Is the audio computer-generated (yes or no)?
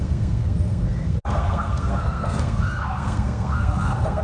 yes